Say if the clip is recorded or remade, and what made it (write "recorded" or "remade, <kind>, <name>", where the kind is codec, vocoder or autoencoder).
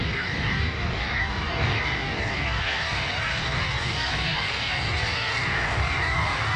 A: remade, codec, DAC